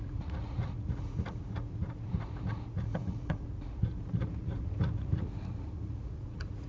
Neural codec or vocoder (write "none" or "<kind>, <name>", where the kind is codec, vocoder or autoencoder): vocoder, Vocos